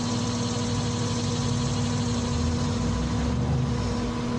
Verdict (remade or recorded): recorded